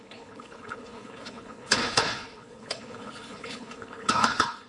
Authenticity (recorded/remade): remade